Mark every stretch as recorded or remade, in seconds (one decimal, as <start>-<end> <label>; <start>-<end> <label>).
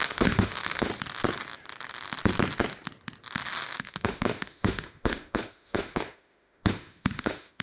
0.0-0.9 remade; 0.9-3.8 recorded; 3.8-7.6 remade